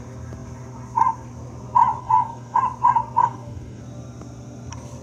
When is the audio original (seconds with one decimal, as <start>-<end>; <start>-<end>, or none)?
0.0-2.0; 2.6-3.2; 3.8-5.0